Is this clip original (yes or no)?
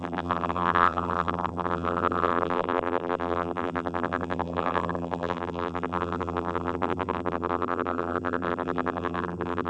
no